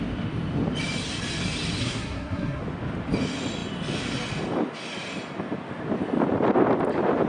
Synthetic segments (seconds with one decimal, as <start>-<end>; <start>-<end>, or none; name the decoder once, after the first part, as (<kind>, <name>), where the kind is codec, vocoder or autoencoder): 1.8-2.6 (codec, SNAC)